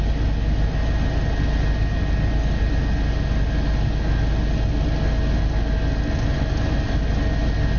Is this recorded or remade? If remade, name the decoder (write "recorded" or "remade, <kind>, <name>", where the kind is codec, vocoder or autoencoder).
recorded